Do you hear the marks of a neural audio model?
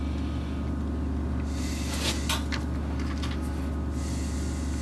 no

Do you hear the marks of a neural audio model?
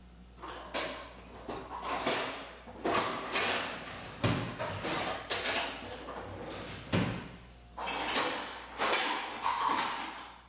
no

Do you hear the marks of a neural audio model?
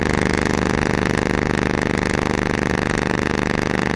no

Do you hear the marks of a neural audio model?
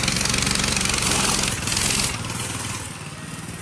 no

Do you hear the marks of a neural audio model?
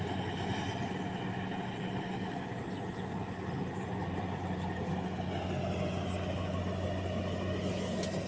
no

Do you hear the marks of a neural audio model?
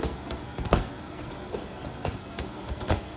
yes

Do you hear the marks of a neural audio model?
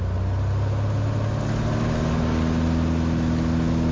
no